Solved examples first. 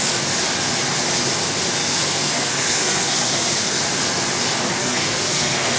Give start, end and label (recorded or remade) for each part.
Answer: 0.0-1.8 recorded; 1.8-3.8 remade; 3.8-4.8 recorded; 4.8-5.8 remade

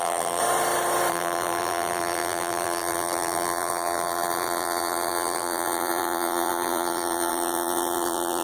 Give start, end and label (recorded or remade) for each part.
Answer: 0.0-0.4 remade; 0.4-1.1 recorded; 1.1-8.4 remade

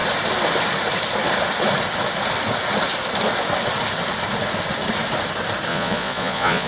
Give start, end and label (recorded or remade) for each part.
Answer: 0.0-5.7 recorded; 5.7-6.7 remade

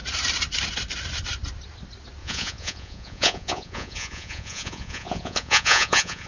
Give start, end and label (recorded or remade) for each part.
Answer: 0.0-2.2 recorded; 2.2-6.3 remade

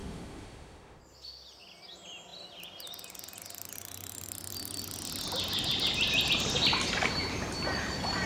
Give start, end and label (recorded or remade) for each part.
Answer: 0.0-1.0 remade; 1.0-8.3 recorded

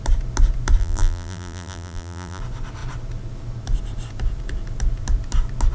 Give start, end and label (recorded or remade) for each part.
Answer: 0.0-0.8 recorded; 0.8-2.4 remade; 2.4-5.7 recorded

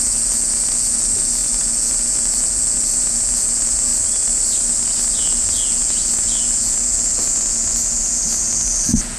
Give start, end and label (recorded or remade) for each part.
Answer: 0.0-3.9 remade; 3.9-5.1 recorded; 5.1-9.2 remade